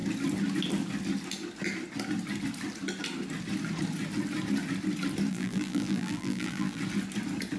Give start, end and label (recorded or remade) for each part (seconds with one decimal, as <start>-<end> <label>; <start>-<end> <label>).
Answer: 0.0-5.3 recorded; 5.3-6.8 remade; 6.8-7.6 recorded